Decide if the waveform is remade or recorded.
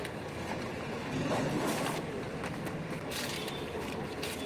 recorded